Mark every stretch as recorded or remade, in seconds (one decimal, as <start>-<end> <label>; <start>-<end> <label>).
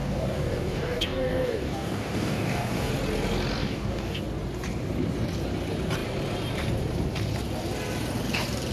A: 0.0-2.9 remade; 2.9-3.6 recorded; 3.6-4.2 remade; 4.2-8.7 recorded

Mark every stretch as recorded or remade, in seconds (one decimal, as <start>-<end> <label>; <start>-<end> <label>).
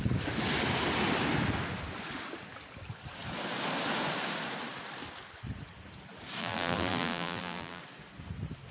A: 0.0-6.4 recorded; 6.4-7.8 remade; 7.8-8.7 recorded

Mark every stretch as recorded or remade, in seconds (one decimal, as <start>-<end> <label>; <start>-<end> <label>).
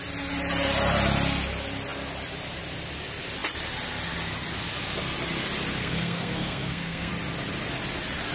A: 0.0-5.8 recorded; 5.8-7.1 remade; 7.1-8.3 recorded